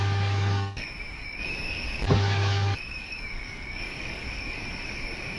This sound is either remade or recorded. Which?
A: remade